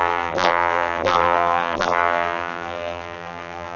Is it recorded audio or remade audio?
remade